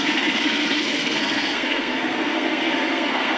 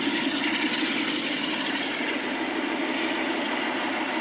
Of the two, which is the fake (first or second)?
first